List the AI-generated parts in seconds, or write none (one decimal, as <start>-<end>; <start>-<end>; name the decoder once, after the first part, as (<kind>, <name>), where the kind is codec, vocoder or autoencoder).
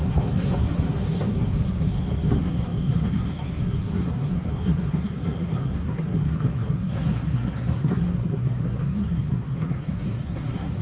0.0-10.8 (codec, SNAC)